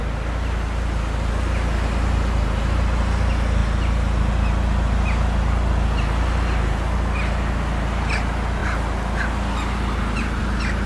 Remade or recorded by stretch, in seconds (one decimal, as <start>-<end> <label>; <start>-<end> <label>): 0.0-10.9 recorded